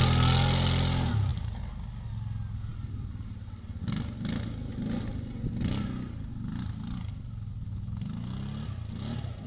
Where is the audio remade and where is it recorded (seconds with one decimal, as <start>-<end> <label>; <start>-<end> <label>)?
0.0-9.5 recorded